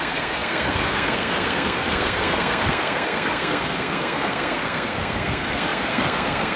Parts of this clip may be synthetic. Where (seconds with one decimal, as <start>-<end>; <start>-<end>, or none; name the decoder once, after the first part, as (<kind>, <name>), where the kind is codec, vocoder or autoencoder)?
0.0-6.6 (codec, SNAC)